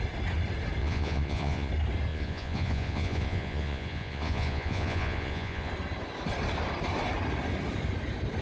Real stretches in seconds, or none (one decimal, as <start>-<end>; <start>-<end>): 0.0-0.8; 1.7-2.1; 5.7-8.4